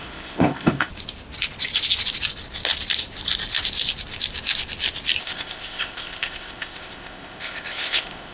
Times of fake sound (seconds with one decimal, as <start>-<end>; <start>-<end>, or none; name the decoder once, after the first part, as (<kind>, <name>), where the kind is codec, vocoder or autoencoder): 0.0-0.9 (codec, ZipCodec); 5.2-8.3